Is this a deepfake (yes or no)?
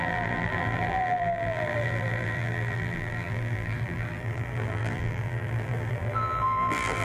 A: yes